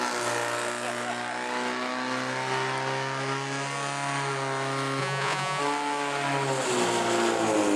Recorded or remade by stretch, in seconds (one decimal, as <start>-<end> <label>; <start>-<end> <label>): 0.0-5.0 recorded; 5.0-5.6 remade; 5.6-7.8 recorded